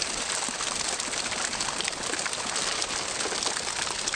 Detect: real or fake real